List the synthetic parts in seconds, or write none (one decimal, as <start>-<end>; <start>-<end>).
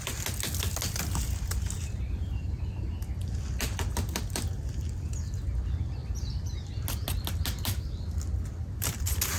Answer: none